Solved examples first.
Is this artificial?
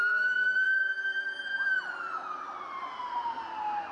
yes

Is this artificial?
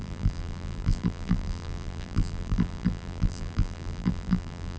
yes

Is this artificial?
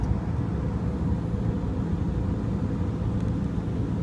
no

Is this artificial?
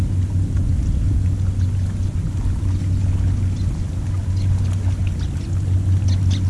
no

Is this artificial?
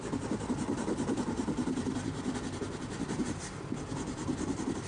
no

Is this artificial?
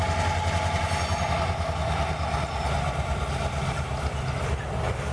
no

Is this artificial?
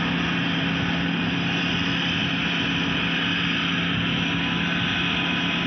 no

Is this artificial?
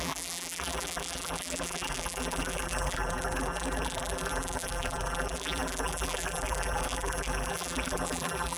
yes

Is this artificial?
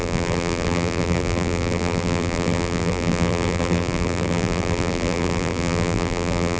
yes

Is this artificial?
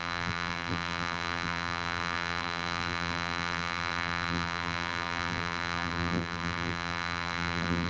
yes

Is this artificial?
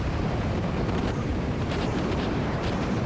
yes